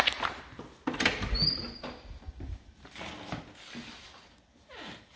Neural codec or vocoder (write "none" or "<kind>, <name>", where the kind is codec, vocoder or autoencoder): none